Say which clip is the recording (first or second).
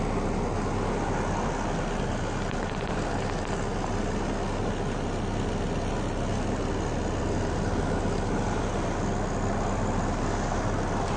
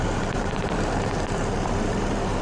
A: first